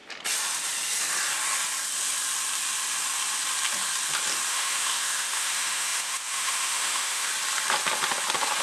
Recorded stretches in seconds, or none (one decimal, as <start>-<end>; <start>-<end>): 0.0-4.5; 7.3-8.6